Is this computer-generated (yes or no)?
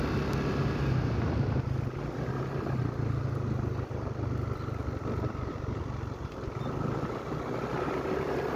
no